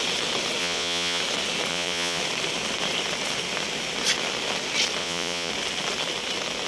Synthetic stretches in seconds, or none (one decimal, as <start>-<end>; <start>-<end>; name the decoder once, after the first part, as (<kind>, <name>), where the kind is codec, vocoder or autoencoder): 0.6-1.2 (vocoder, Vocos); 1.7-2.2; 5.0-5.5